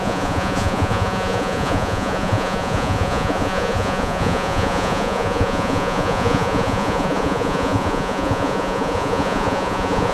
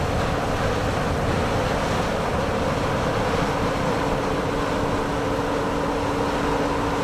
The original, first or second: second